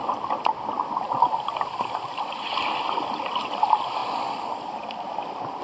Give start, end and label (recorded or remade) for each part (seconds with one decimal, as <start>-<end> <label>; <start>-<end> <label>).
0.0-3.4 remade; 3.4-4.0 recorded; 4.0-5.6 remade